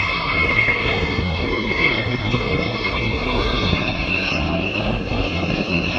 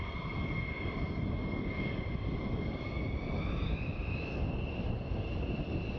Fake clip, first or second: first